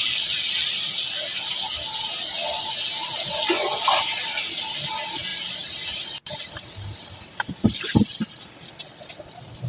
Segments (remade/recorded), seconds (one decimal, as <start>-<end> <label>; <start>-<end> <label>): 0.0-5.3 recorded; 5.3-7.8 remade; 7.8-9.7 recorded